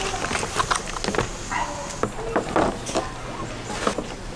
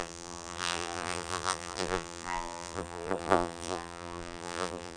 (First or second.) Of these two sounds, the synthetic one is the second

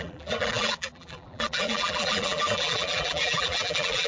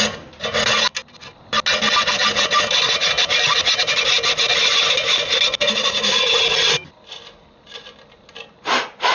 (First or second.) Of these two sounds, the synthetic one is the first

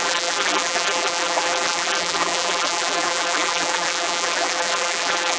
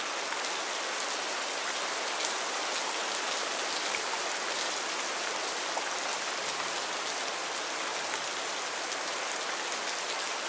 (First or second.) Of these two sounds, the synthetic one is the first